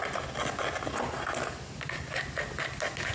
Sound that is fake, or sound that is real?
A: real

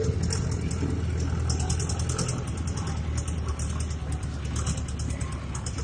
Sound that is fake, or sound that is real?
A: real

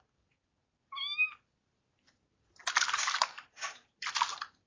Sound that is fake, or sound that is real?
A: real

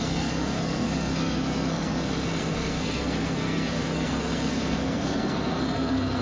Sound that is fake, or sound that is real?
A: fake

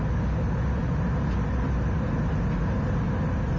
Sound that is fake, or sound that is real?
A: real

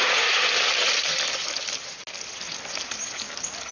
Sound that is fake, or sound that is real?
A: real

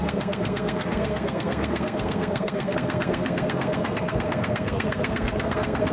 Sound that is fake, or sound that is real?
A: fake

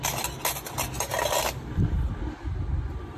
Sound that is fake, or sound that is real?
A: real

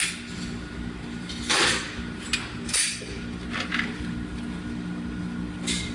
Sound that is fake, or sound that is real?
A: real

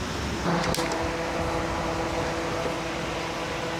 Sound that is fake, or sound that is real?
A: real